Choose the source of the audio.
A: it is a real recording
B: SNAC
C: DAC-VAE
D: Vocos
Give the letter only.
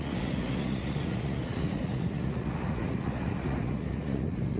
D